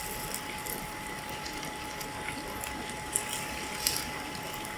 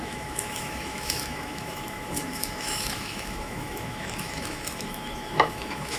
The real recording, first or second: first